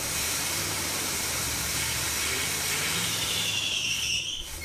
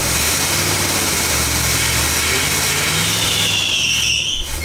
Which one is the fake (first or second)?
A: first